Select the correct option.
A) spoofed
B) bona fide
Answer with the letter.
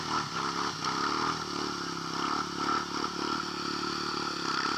B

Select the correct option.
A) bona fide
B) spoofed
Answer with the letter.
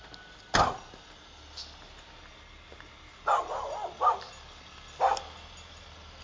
A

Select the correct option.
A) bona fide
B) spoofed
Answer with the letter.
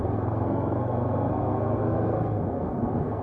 B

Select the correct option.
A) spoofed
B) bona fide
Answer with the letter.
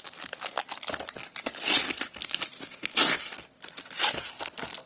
B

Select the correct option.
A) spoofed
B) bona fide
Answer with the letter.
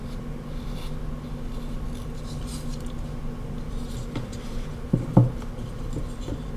B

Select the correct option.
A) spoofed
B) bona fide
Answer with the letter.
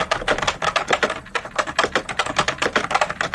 B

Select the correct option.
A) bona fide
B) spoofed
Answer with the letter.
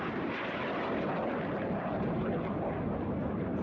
A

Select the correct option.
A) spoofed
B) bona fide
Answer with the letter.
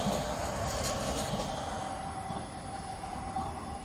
B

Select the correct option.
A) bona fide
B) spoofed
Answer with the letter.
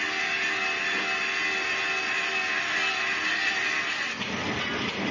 A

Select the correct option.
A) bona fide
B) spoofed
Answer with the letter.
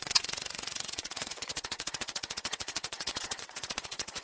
B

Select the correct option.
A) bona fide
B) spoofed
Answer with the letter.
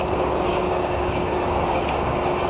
B